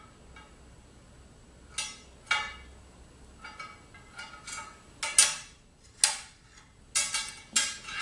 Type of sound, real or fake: real